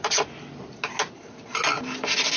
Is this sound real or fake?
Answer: real